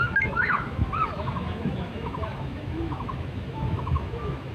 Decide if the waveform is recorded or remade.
remade